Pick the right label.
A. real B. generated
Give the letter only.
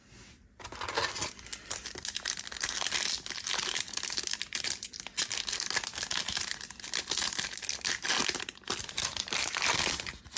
A